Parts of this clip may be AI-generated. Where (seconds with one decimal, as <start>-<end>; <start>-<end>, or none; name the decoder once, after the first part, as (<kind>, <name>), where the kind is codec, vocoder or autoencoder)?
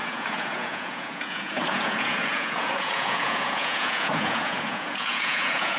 0.0-5.8 (vocoder, Vocos)